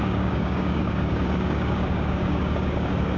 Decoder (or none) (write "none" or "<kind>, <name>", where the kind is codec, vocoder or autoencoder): codec, DAC